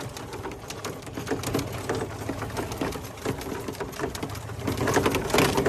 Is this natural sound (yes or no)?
yes